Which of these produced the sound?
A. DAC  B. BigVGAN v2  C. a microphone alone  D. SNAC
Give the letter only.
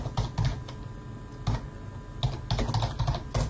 C